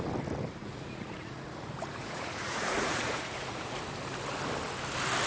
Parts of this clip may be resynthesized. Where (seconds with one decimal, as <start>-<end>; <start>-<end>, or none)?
0.6-3.8